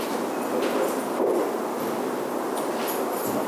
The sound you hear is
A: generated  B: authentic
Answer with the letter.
B